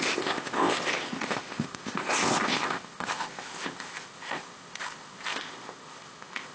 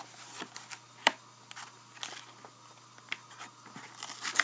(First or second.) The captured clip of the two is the second